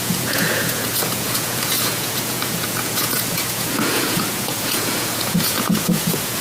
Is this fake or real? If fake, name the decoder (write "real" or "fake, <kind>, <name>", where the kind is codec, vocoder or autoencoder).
fake, vocoder, Vocos